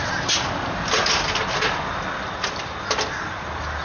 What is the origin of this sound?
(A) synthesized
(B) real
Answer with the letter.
B